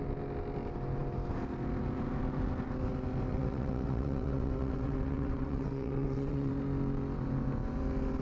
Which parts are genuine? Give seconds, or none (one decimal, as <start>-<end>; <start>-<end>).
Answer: 0.0-3.3; 6.5-8.2